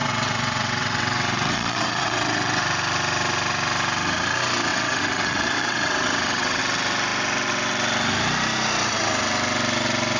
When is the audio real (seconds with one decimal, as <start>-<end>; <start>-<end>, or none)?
2.6-4.7; 6.6-10.2